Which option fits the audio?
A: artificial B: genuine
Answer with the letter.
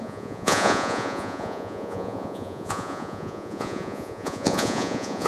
A